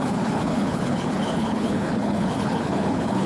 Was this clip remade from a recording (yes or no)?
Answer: yes